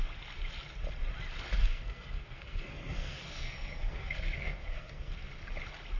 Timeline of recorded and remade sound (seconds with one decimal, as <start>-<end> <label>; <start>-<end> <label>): 0.0-1.6 recorded; 1.6-5.1 remade; 5.1-6.0 recorded